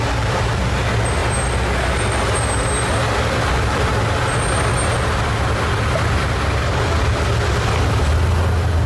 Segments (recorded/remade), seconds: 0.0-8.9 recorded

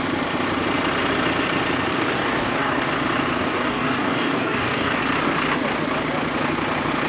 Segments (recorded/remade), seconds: 0.0-1.9 recorded; 1.9-2.9 remade; 2.9-3.4 recorded; 3.4-5.0 remade; 5.0-7.1 recorded

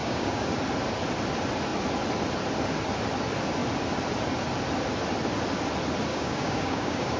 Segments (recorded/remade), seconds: 0.0-0.5 remade; 0.5-6.1 recorded; 6.1-7.2 remade

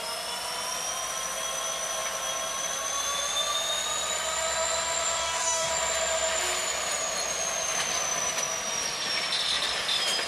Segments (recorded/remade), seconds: 0.0-5.2 recorded; 5.2-5.7 remade; 5.7-10.3 recorded

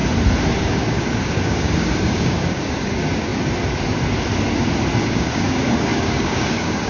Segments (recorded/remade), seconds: 0.0-0.6 recorded; 0.6-3.3 remade; 3.3-5.1 recorded; 5.1-6.9 remade

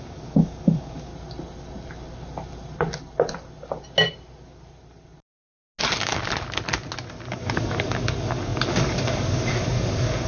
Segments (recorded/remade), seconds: 0.0-1.1 remade; 1.1-5.8 recorded; 5.8-6.2 remade; 6.2-7.3 recorded; 7.3-10.3 remade